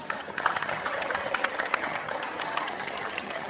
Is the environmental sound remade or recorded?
remade